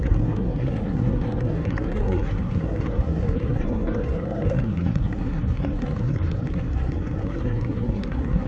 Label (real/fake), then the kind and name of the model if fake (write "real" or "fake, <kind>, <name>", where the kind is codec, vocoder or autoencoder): fake, codec, SNAC